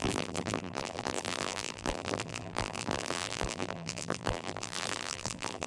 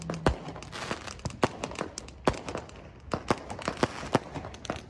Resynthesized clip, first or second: first